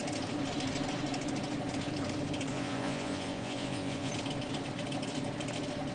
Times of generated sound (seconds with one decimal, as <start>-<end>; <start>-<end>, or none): 2.5-4.1